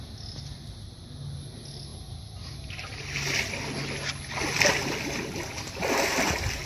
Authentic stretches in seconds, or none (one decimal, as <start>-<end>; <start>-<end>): 0.0-6.7